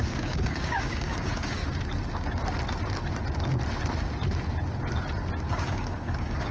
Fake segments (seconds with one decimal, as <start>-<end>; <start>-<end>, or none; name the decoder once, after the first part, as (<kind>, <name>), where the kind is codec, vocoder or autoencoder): 0.0-1.6 (codec, DAC); 5.5-6.5

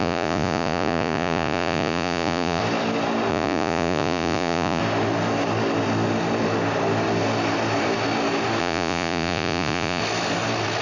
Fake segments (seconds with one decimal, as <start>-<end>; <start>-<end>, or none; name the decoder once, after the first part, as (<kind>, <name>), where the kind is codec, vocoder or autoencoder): 0.0-2.6 (vocoder, Vocos); 3.3-4.8; 8.6-10.0